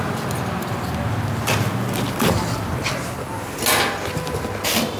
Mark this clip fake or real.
real